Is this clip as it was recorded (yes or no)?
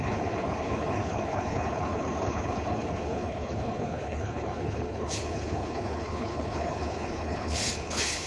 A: no